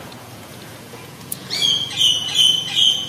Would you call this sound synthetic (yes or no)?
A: yes